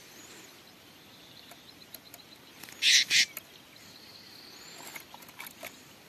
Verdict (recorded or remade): recorded